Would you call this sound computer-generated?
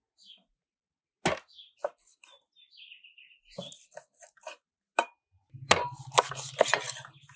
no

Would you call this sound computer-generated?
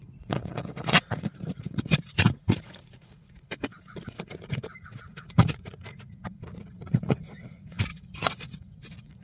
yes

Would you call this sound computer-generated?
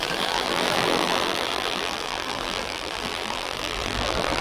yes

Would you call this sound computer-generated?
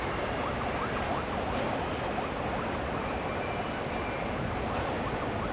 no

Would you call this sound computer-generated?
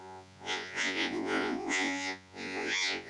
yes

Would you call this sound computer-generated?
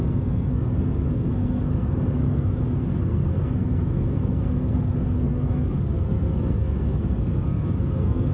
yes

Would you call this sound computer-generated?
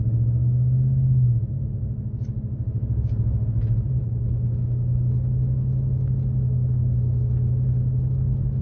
no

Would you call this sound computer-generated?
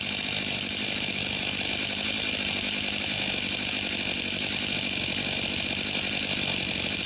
no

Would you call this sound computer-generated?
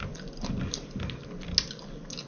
no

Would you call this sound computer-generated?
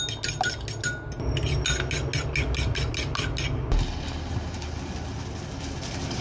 no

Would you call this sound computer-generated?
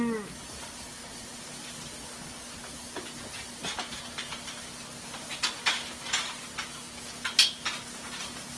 no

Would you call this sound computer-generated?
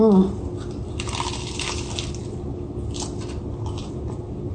no